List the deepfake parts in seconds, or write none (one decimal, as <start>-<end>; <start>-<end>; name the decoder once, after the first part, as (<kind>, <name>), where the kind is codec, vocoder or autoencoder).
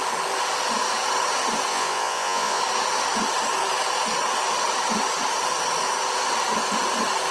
1.7-2.6 (vocoder, Vocos)